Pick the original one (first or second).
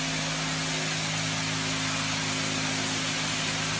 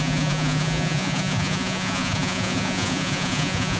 first